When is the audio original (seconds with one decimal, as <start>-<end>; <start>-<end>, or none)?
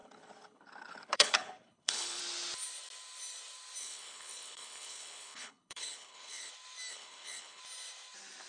2.2-3.8; 6.5-6.9; 7.6-8.5